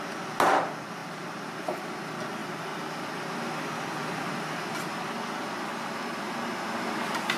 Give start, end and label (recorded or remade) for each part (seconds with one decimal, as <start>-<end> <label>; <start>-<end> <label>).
0.0-2.4 recorded; 2.4-2.9 remade; 2.9-7.4 recorded